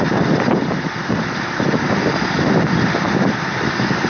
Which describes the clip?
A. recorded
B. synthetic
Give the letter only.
A